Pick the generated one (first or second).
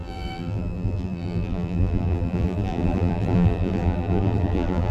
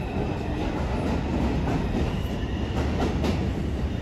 first